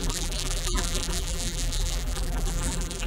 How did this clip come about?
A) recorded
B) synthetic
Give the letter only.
B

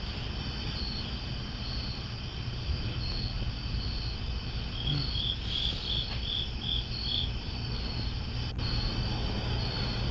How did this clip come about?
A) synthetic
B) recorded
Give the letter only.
B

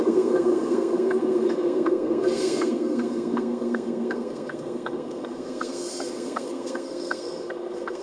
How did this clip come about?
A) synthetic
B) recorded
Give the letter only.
A